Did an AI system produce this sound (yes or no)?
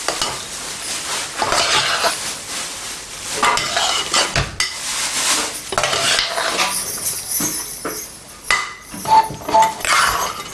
no